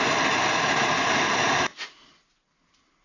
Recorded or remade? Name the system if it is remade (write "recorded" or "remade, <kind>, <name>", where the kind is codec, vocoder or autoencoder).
recorded